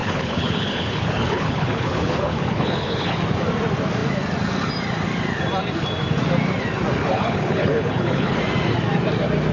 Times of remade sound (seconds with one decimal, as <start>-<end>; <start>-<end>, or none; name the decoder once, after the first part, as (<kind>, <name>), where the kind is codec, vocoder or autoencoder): 0.0-3.2 (codec, HILCodec); 7.0-8.4